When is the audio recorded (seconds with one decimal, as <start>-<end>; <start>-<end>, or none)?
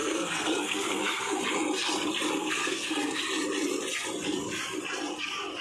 1.4-2.4; 3.2-5.6